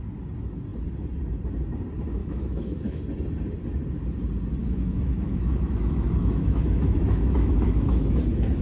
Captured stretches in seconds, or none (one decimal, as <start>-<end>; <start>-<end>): 0.0-2.2; 3.0-4.6; 8.2-8.6